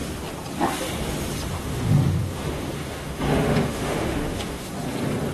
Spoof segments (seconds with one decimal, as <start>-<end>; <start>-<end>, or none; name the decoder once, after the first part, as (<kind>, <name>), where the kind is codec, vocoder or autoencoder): 1.5-4.7 (autoencoder, DAC-VAE)